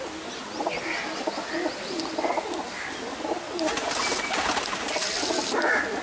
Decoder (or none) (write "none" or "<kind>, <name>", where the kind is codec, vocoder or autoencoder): none